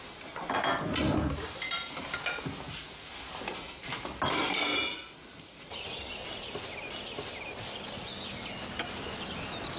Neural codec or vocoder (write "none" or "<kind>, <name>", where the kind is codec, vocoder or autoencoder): none